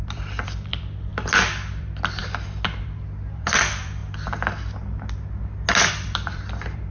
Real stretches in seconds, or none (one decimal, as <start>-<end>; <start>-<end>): 1.1-1.8; 2.2-2.8; 4.0-5.9